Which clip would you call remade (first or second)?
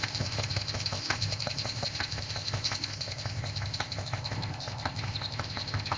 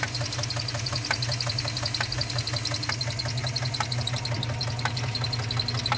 first